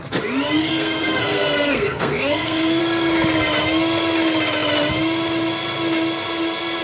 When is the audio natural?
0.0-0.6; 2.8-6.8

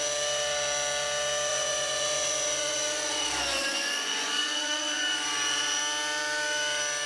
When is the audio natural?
0.0-1.5; 5.8-7.1

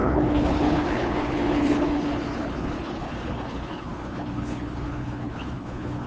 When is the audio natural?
none

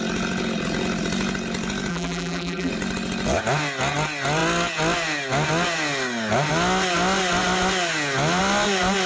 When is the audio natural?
0.0-1.9; 2.7-9.1